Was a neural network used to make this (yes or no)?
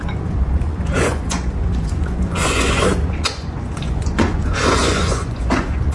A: yes